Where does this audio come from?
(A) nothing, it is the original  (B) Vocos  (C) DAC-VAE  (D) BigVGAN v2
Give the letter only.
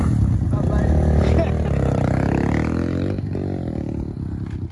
A